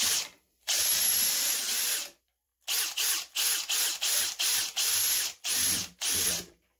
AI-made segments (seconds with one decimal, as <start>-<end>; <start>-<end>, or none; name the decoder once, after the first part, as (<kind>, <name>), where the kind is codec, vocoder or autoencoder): 0.0-2.5 (vocoder, BigVGAN v2); 6.0-6.8